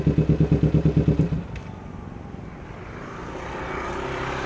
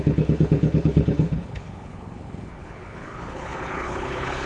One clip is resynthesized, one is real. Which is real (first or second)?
first